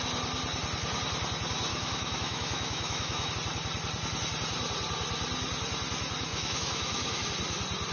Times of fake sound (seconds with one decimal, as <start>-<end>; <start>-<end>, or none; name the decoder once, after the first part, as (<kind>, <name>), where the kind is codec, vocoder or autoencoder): 1.7-3.3 (autoencoder, DAC-VAE); 6.3-7.3